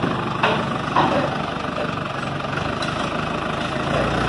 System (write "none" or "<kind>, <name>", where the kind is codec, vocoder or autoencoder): none